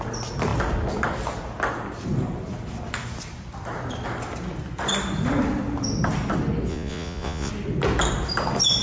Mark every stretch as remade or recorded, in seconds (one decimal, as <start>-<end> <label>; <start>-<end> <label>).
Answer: 0.0-6.7 recorded; 6.7-7.5 remade; 7.5-8.8 recorded